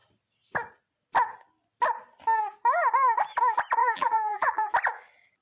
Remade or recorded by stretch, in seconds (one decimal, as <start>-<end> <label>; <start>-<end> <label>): 0.0-3.8 recorded; 3.8-4.7 remade; 4.7-5.4 recorded